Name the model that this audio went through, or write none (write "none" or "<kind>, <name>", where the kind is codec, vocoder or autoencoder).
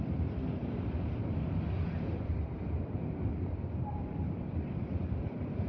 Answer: vocoder, BigVGAN v2